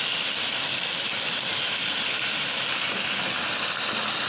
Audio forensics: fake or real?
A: real